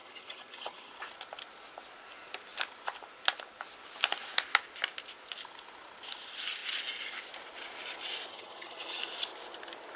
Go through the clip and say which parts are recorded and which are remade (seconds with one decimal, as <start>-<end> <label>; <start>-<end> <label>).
0.0-0.9 remade; 0.9-8.3 recorded; 8.3-9.0 remade; 9.0-10.0 recorded